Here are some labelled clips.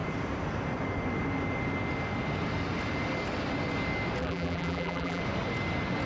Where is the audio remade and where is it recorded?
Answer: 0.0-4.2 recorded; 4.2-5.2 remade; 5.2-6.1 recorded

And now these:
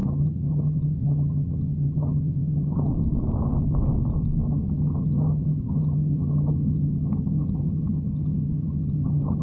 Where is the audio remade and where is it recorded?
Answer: 0.0-2.9 remade; 2.9-4.5 recorded; 4.5-9.4 remade

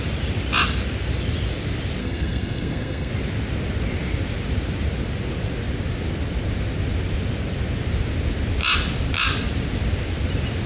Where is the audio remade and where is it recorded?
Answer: 0.0-2.0 recorded; 2.0-3.1 remade; 3.1-10.7 recorded

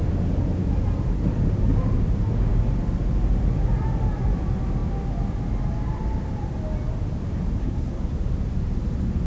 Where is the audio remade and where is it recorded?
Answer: 0.0-7.6 recorded; 7.6-8.1 remade; 8.1-9.3 recorded

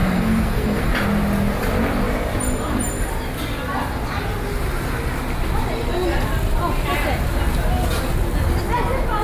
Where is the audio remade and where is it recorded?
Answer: 0.0-0.9 remade; 0.9-9.2 recorded

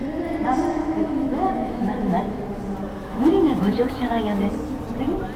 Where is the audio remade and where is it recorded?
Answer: 0.0-0.8 recorded; 0.8-2.4 remade; 2.4-2.9 recorded; 2.9-4.5 remade; 4.5-5.4 recorded

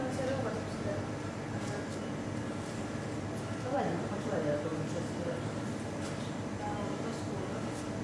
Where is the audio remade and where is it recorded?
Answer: 0.0-8.0 recorded

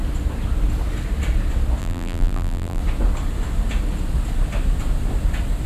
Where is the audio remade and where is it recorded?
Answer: 0.0-1.8 recorded; 1.8-2.8 remade; 2.8-5.7 recorded